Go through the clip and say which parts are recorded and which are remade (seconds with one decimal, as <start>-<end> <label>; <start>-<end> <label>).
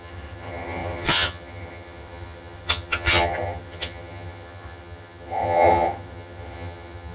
0.0-7.1 remade